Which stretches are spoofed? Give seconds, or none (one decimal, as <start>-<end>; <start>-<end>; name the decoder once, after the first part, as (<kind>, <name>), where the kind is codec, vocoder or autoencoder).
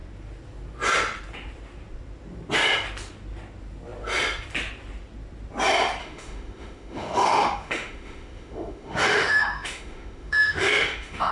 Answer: 6.0-11.3 (autoencoder, DAC-VAE)